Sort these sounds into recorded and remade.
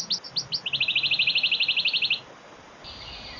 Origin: recorded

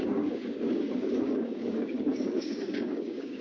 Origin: remade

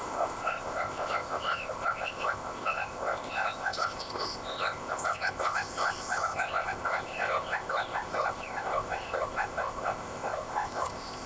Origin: remade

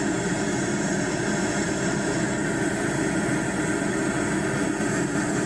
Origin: recorded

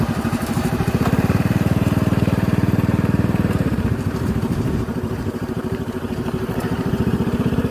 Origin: remade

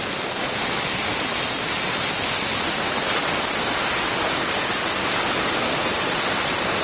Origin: recorded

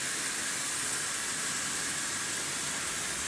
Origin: recorded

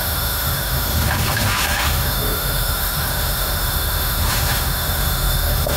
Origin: remade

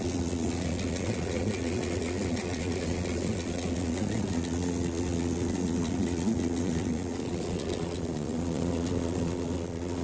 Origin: remade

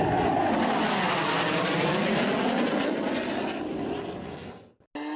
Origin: recorded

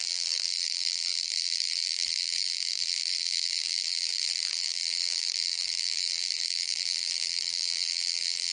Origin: remade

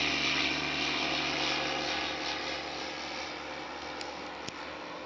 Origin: recorded